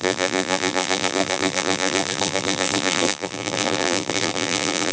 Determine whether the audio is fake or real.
fake